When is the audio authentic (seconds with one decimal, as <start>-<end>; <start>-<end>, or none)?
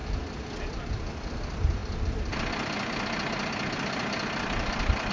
0.0-5.1